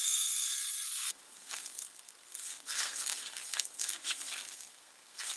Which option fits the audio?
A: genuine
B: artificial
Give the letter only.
B